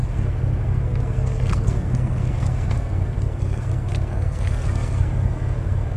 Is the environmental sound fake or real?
fake